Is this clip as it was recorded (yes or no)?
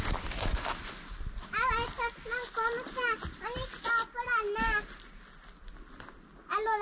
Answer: yes